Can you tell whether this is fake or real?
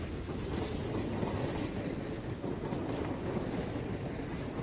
real